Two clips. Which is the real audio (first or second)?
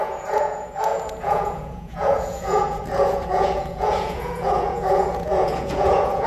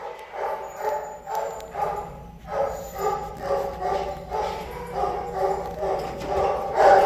second